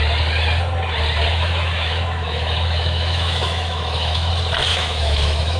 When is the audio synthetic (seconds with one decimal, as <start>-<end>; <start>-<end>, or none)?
1.3-4.3; 4.7-5.6